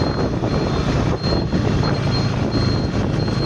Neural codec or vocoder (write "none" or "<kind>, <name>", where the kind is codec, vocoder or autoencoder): none